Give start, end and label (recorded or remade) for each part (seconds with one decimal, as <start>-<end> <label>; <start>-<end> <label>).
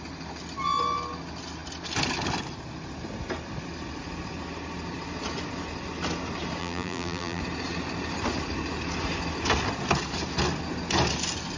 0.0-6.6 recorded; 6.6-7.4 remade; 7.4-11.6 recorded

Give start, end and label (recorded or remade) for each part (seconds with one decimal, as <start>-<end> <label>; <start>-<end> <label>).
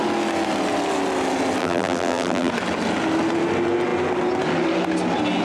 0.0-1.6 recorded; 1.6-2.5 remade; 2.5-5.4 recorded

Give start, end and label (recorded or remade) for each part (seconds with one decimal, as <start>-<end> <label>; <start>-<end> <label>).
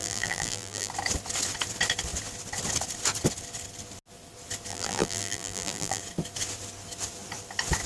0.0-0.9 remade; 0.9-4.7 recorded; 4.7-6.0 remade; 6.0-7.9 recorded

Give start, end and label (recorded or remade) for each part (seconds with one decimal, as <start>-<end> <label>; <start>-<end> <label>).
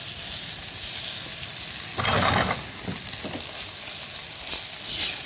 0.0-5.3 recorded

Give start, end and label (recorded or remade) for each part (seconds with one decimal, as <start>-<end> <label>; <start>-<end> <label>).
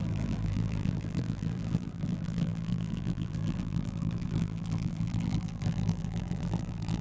0.0-7.0 remade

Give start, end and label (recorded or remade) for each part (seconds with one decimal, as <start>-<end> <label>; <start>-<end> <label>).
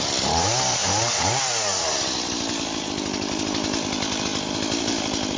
0.0-5.4 remade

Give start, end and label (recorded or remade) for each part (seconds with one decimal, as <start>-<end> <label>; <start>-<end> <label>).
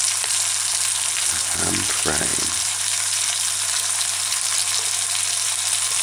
0.0-2.3 recorded; 2.3-6.0 remade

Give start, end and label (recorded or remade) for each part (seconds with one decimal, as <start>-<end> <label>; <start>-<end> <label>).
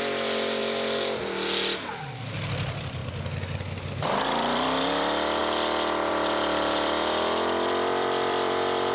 0.0-0.6 remade; 0.6-1.9 recorded; 1.9-3.0 remade; 3.0-3.9 recorded; 3.9-5.4 remade; 5.4-6.1 recorded; 6.1-8.9 remade